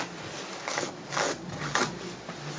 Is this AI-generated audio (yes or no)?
no